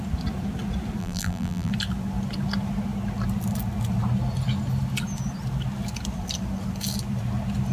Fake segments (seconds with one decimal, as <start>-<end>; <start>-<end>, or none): 1.0-1.7